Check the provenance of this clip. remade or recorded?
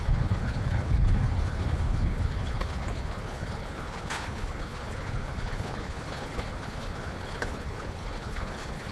remade